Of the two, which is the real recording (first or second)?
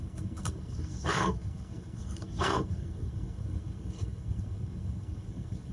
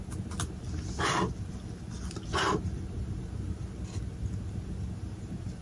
second